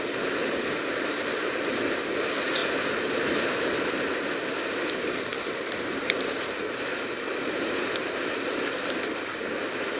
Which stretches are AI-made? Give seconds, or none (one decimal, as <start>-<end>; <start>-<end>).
0.4-1.8; 2.6-3.9; 5.3-8.3